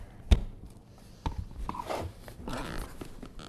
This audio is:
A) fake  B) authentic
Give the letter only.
B